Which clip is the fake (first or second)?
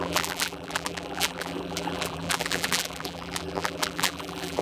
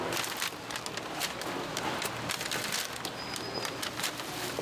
first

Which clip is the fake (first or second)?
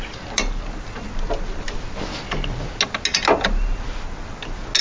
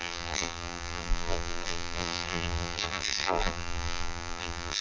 second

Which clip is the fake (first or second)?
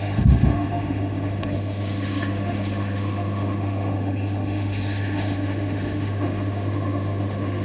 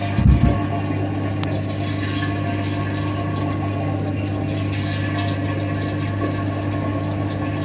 first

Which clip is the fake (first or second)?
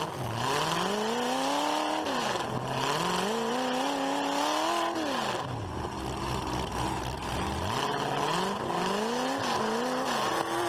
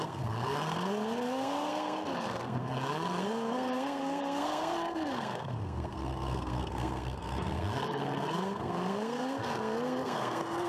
second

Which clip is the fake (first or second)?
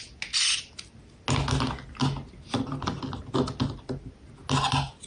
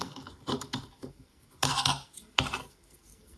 second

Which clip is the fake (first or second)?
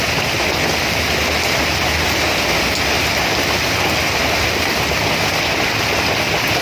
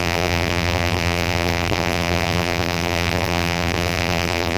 second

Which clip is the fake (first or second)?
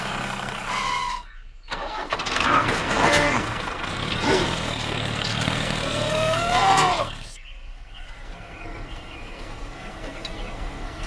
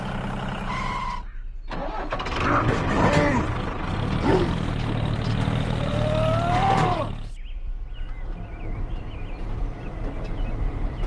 first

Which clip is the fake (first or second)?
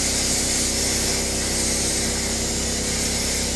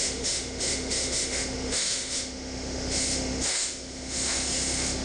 second